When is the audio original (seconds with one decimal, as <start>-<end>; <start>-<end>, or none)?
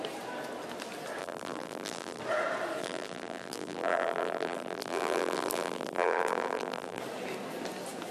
0.0-1.2; 2.2-2.8; 7.0-8.1